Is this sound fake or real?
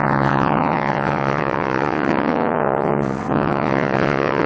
fake